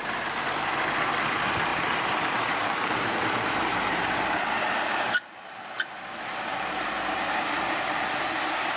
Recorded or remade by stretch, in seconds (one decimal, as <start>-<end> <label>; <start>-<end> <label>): 0.0-1.7 recorded; 1.7-4.2 remade; 4.2-6.5 recorded; 6.5-7.8 remade; 7.8-8.8 recorded